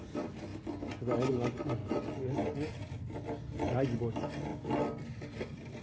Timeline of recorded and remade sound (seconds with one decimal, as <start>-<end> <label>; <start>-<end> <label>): 0.0-5.8 recorded